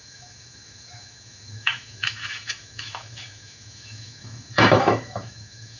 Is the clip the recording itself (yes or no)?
no